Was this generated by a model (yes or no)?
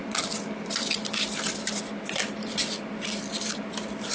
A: no